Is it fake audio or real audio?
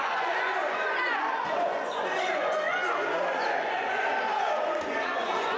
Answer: fake